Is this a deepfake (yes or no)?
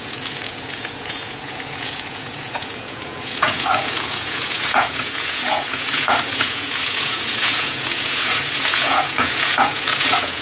yes